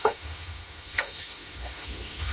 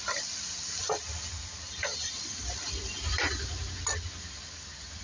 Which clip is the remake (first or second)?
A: first